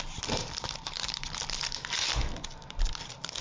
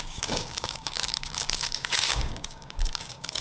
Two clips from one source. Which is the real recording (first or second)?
first